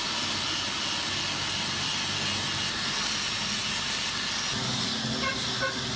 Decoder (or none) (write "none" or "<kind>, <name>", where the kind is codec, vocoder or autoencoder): none